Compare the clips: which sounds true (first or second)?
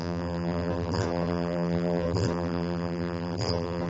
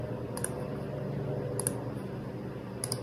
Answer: second